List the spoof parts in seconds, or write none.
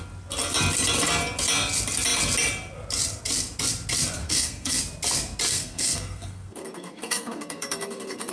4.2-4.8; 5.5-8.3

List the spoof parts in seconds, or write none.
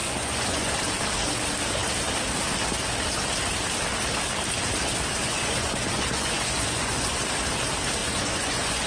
0.0-0.7; 5.2-7.2; 8.0-8.9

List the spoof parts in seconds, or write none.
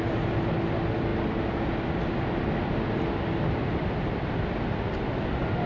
none